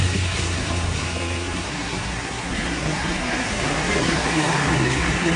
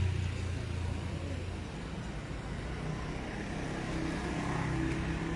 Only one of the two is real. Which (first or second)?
second